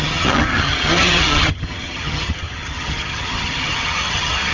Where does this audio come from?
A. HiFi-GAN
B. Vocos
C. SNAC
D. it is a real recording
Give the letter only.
A